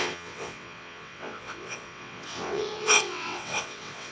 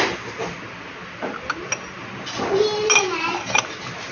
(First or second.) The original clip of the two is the second